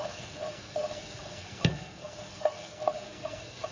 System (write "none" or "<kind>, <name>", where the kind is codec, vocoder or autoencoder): codec, SNAC